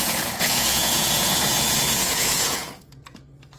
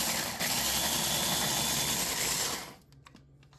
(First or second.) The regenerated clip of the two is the first